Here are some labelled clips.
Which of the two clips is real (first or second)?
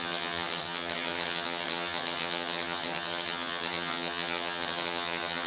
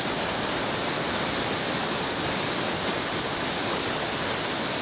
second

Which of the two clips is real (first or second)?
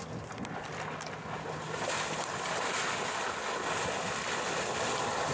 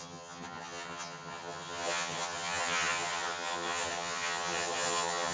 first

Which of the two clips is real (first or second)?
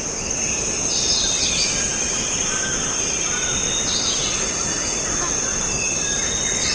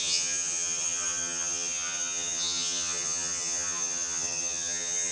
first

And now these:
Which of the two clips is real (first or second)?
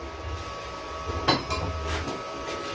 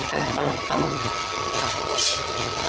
first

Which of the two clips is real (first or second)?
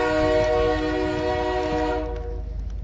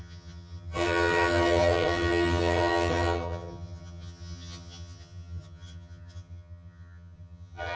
first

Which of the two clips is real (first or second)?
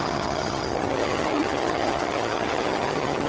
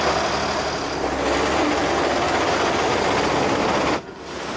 second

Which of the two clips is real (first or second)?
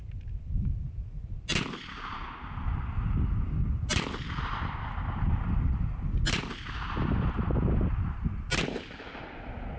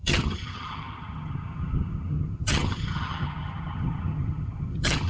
first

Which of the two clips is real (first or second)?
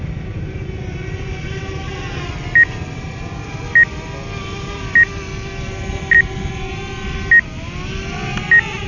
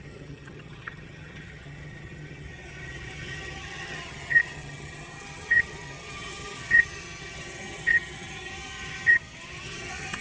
first